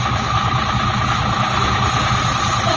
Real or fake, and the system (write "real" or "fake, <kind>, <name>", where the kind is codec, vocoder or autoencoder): real